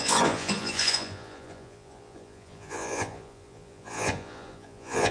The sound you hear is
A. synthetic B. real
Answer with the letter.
A